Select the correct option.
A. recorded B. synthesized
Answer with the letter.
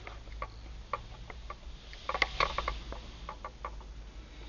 A